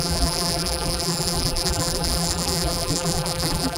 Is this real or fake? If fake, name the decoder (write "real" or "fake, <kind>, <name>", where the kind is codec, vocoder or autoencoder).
fake, vocoder, BigVGAN v2